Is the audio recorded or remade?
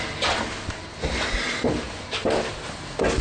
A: recorded